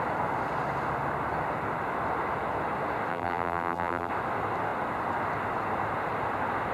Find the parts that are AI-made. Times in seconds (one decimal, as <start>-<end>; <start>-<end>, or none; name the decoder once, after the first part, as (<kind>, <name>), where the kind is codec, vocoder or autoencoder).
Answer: 3.1-4.1 (vocoder, BigVGAN v2)